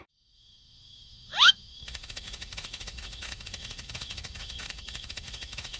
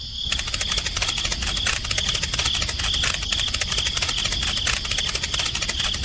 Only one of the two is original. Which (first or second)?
second